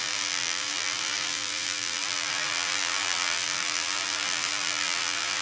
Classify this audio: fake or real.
fake